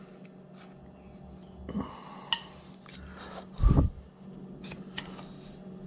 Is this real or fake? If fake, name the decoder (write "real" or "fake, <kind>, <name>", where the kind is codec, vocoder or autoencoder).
real